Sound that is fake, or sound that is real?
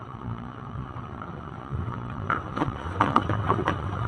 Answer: fake